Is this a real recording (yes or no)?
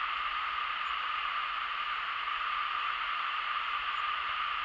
yes